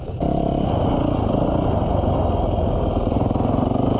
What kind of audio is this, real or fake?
real